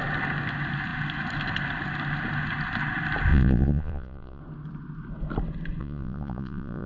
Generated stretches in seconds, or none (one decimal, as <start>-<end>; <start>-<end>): 3.3-4.4; 5.8-6.9